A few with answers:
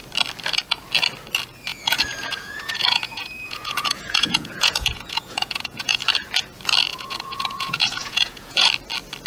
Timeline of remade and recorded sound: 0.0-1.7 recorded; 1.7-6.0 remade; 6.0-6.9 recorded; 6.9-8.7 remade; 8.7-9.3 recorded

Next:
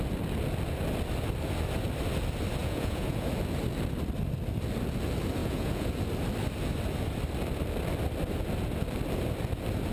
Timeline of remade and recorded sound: 0.0-2.6 recorded; 2.6-3.3 remade; 3.3-5.4 recorded; 5.4-6.0 remade; 6.0-9.9 recorded

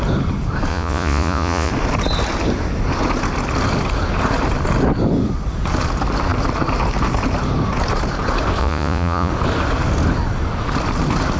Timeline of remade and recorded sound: 0.0-0.7 recorded; 0.7-1.7 remade; 1.7-8.6 recorded; 8.6-9.3 remade; 9.3-11.4 recorded

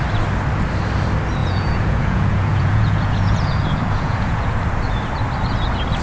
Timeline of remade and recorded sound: 0.0-1.4 recorded; 1.4-4.5 remade; 4.5-6.0 recorded